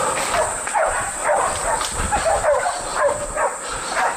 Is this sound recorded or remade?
remade